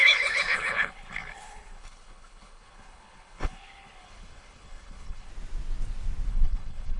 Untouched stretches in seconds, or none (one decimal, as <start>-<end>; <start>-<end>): 5.3-6.3